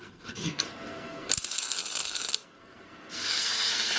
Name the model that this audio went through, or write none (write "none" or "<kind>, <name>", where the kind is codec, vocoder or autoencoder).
codec, SNAC